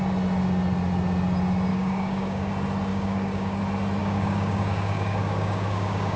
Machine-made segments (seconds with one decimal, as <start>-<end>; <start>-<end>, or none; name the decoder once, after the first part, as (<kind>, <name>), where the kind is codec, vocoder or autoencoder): 1.7-2.5 (codec, DAC); 2.9-3.6; 4.0-6.2